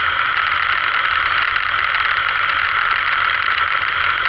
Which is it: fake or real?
real